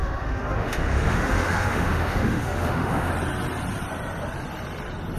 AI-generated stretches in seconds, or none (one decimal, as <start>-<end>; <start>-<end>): 0.0-3.1